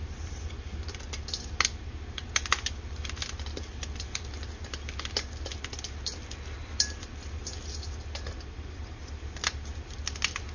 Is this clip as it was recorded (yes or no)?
yes